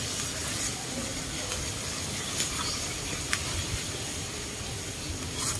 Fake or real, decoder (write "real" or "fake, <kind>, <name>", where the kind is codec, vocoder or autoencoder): real